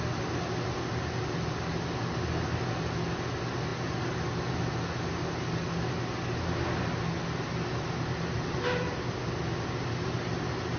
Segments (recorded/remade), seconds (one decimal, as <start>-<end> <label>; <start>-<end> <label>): 0.0-10.8 recorded